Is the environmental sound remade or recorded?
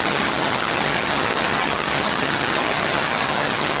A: remade